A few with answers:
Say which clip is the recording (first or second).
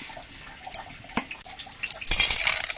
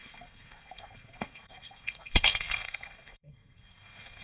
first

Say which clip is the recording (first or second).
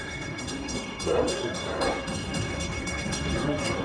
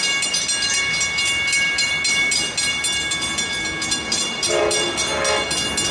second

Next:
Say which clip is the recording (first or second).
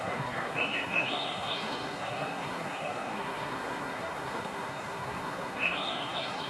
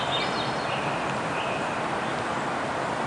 second